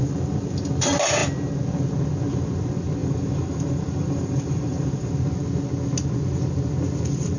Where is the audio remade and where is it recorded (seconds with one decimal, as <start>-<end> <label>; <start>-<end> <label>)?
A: 0.0-3.0 recorded; 3.0-5.1 remade; 5.1-7.4 recorded